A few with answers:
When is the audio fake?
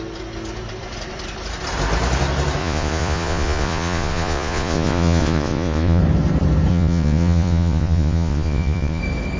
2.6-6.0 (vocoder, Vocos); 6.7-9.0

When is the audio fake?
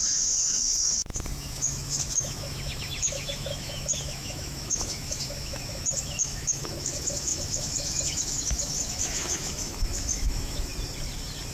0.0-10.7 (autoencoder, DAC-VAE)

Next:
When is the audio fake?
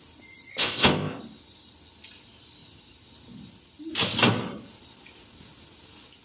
0.5-1.2 (codec, ZipCodec)